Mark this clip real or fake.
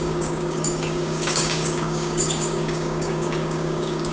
fake